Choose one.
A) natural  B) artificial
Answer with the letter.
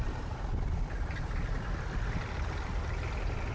A